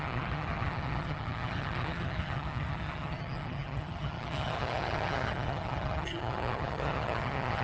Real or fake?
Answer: fake